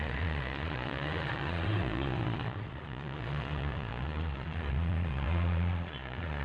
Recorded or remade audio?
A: remade